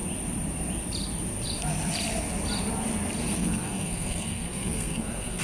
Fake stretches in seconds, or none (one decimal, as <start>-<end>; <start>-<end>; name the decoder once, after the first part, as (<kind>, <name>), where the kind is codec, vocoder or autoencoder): 3.2-5.4 (codec, SNAC)